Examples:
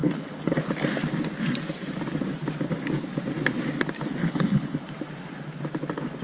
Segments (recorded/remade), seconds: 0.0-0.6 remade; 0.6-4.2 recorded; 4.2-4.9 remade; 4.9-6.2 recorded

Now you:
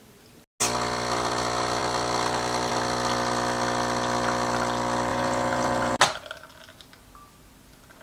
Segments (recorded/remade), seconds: 0.0-5.1 recorded; 5.1-6.0 remade; 6.0-8.0 recorded

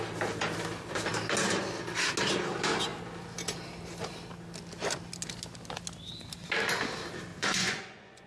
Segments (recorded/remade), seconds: 0.0-7.3 recorded; 7.3-8.3 remade

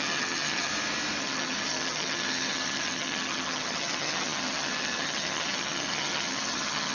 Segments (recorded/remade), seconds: 0.0-0.7 remade; 0.7-1.2 recorded; 1.2-6.9 remade

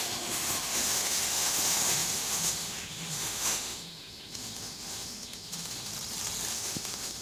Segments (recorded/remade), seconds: 0.0-5.9 remade; 5.9-6.5 recorded; 6.5-7.2 remade